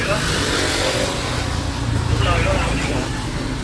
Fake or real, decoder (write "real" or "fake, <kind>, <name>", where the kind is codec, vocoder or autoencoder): real